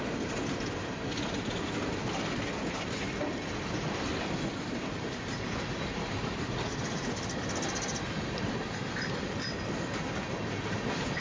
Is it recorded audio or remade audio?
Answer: recorded